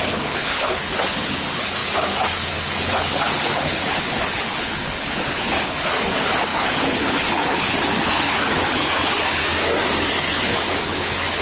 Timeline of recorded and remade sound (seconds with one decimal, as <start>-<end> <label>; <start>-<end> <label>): 0.0-9.4 remade; 9.4-10.1 recorded; 10.1-11.4 remade